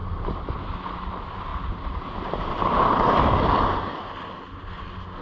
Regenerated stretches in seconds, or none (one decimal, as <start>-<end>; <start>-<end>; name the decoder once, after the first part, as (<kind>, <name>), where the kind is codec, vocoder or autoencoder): none